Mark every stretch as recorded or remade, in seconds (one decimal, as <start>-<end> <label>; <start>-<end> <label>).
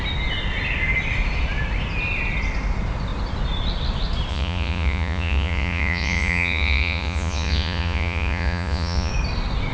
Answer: 0.0-4.3 recorded; 4.3-9.1 remade; 9.1-9.7 recorded